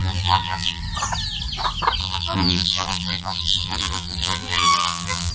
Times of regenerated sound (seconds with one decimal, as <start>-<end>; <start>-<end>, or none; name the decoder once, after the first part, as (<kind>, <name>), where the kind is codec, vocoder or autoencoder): 0.0-0.8 (vocoder, BigVGAN v2); 2.0-5.3